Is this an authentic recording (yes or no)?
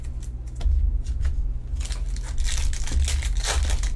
yes